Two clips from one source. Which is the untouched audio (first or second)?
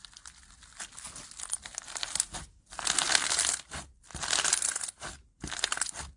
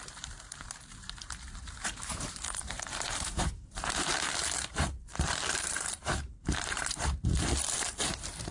first